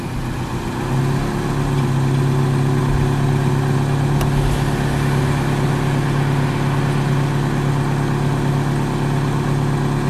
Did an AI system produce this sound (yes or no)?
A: no